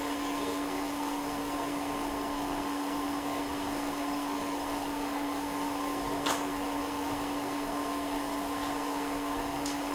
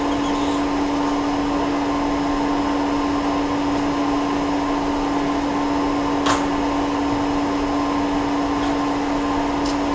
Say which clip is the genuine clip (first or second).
second